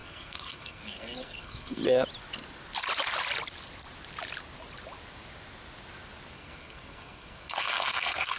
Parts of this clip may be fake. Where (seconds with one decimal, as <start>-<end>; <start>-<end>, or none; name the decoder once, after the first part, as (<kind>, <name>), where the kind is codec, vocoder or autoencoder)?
0.0-1.8 (codec, SNAC); 6.3-8.4